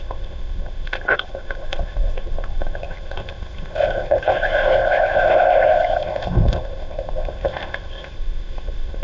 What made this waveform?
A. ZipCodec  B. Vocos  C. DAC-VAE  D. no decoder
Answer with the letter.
A